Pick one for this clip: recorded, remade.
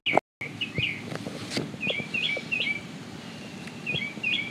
recorded